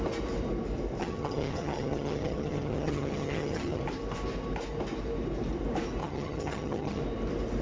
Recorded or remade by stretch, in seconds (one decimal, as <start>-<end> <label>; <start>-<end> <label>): 0.0-1.0 recorded; 1.0-3.8 remade; 3.8-6.0 recorded; 6.0-7.0 remade; 7.0-7.6 recorded